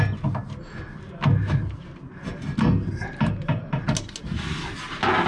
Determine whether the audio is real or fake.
real